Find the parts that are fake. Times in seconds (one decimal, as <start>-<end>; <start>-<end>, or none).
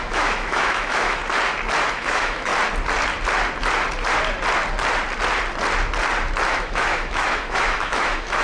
0.0-1.2; 1.9-2.5; 6.5-8.4